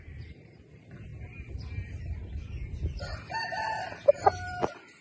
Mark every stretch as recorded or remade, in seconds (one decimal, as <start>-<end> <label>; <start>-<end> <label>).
0.0-1.1 remade; 1.1-4.1 recorded; 4.1-5.0 remade